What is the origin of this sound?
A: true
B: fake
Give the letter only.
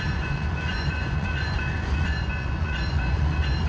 B